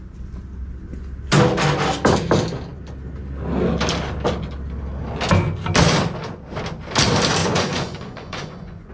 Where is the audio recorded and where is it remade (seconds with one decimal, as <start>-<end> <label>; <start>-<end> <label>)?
0.0-7.4 recorded; 7.4-8.9 remade